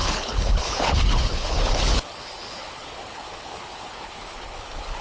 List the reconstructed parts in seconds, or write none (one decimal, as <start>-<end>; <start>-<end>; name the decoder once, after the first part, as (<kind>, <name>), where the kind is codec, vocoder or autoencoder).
0.0-5.0 (codec, HILCodec)